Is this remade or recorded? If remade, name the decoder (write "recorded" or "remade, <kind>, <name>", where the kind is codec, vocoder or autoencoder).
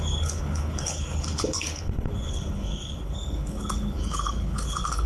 remade, codec, HILCodec